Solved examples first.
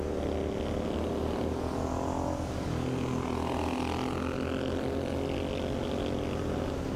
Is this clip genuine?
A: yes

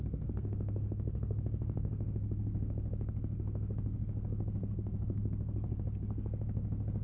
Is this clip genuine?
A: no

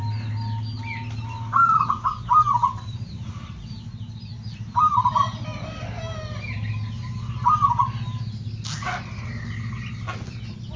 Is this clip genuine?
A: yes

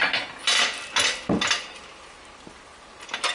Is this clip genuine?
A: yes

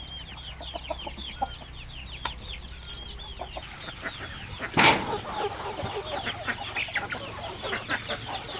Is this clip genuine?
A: yes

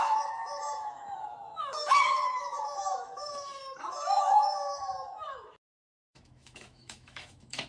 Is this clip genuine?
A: no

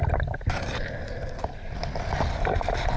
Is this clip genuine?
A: yes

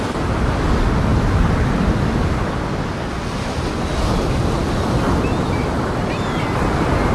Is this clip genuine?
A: yes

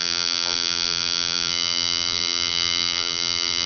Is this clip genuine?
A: no